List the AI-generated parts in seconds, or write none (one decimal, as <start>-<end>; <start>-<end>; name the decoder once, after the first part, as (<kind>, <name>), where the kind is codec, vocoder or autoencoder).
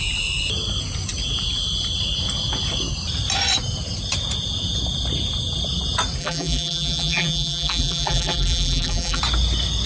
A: 6.2-9.2 (vocoder, BigVGAN v2)